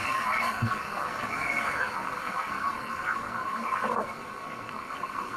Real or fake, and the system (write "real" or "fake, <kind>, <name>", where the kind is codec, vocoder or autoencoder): fake, codec, SNAC